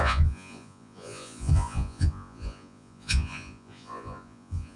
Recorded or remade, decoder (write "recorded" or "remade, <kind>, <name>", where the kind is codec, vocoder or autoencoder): remade, vocoder, Vocos